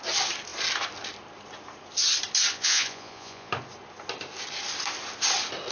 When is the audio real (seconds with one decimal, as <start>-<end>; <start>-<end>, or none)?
0.0-2.5; 3.5-5.7